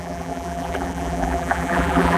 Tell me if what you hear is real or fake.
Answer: fake